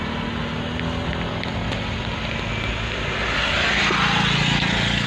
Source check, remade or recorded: recorded